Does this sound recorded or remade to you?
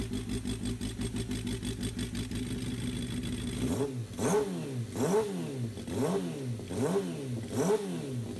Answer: recorded